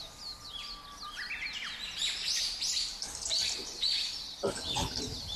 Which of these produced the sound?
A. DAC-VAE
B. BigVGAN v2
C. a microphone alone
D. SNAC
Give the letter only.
C